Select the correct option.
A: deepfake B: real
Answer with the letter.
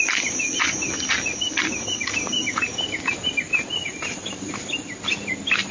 B